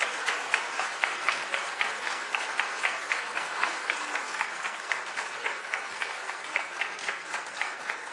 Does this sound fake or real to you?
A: fake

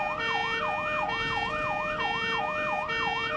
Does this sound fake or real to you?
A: real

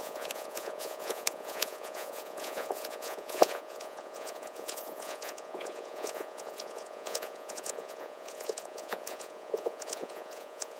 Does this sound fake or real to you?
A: fake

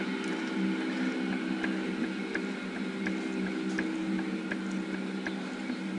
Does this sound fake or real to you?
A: real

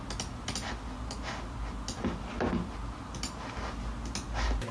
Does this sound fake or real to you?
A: real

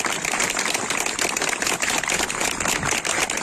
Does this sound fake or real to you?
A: fake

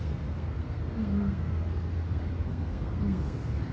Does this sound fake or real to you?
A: fake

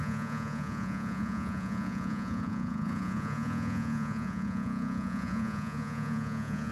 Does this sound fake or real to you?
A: fake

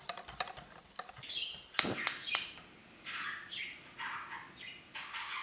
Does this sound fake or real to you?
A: real